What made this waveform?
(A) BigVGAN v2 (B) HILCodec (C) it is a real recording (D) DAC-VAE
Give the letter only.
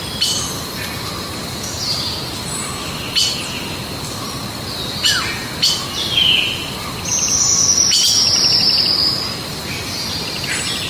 C